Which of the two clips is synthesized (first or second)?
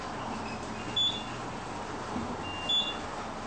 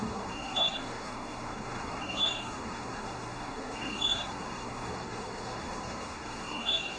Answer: second